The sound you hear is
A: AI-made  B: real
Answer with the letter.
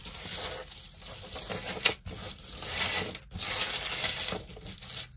B